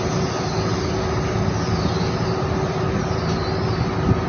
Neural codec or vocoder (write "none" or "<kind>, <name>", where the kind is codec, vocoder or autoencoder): none